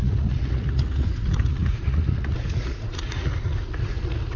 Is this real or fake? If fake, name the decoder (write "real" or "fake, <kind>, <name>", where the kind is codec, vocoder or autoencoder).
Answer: fake, vocoder, Vocos